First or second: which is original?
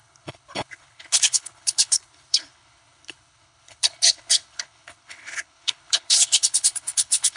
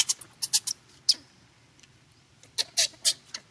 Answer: second